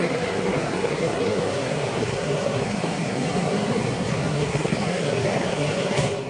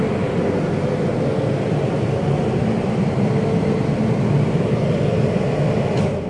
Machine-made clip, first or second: first